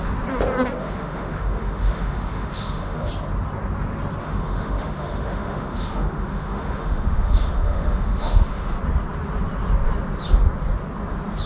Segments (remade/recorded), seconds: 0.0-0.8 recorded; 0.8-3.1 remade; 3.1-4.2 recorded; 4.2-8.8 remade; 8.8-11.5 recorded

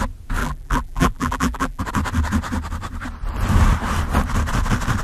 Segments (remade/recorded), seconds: 0.0-0.4 recorded; 0.4-1.8 remade; 1.8-5.0 recorded

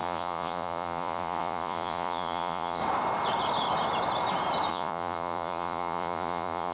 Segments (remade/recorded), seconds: 0.0-2.8 remade; 2.8-4.7 recorded; 4.7-6.7 remade